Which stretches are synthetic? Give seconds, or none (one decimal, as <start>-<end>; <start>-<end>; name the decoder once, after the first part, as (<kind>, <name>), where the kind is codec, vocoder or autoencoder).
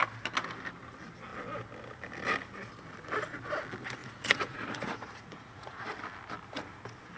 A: 4.0-5.8 (vocoder, Vocos)